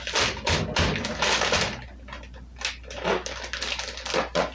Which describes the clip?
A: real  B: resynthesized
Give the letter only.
A